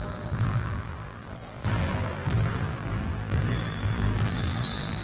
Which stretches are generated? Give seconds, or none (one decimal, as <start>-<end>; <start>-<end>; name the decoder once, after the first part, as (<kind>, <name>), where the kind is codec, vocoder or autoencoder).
0.0-5.0 (vocoder, BigVGAN v2)